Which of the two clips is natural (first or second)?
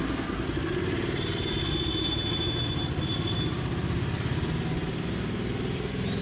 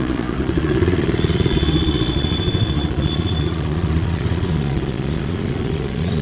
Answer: first